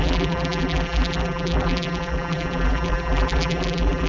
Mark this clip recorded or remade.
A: remade